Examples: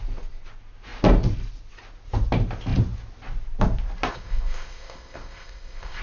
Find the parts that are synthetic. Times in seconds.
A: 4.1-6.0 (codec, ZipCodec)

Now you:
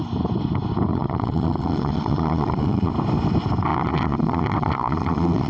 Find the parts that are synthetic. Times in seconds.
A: 0.9-2.9 (vocoder, Vocos); 3.7-5.5